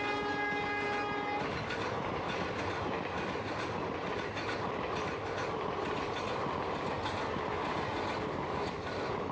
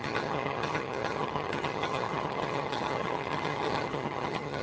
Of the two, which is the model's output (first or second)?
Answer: second